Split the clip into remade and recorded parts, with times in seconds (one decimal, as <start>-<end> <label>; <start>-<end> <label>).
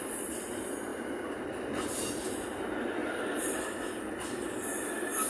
0.0-5.3 recorded